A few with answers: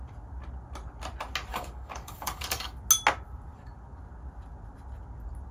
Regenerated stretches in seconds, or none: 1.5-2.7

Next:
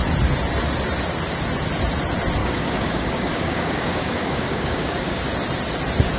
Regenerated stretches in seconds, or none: 2.4-5.2